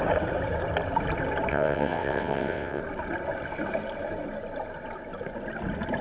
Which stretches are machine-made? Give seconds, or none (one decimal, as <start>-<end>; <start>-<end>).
1.5-2.8